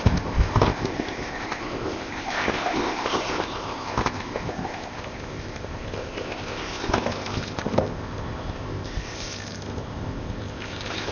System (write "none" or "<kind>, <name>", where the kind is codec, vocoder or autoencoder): codec, ZipCodec